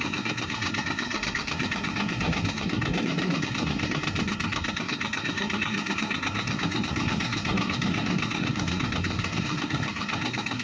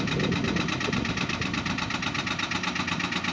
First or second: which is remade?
first